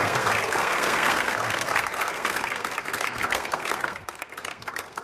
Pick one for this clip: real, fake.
fake